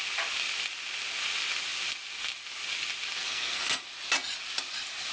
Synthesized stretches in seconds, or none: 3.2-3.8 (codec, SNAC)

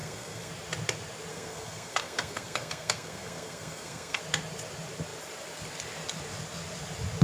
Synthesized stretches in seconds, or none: 0.0-0.5 (codec, SNAC); 1.3-4.2

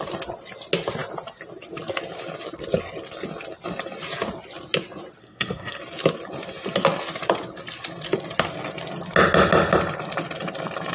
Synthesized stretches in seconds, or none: 5.2-5.8 (codec, SNAC)

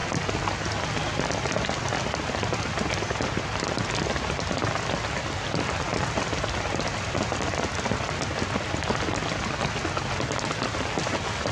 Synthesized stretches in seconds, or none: none

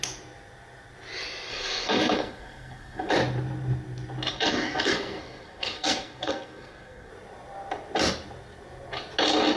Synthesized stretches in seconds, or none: 1.5-3.1 (codec, SNAC); 4.3-7.1

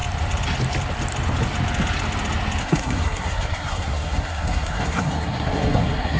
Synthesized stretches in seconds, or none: 2.6-6.2 (codec, SNAC)